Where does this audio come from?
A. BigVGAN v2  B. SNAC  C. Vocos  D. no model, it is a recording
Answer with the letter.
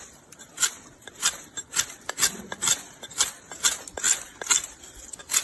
A